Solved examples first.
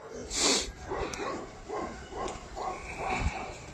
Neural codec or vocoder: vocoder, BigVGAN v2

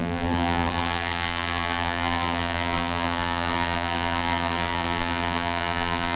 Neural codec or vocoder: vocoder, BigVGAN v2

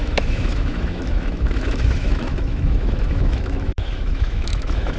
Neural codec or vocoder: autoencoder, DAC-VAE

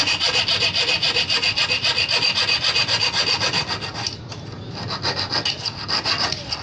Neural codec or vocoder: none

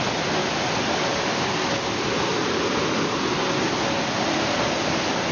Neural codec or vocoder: none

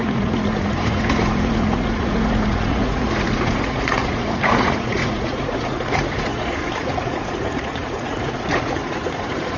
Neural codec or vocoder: vocoder, Vocos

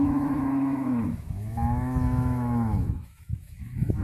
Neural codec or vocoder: autoencoder, DAC-VAE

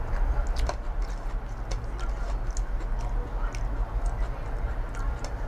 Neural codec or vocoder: none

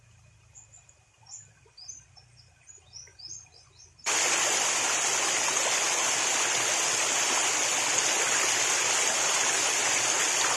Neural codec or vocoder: none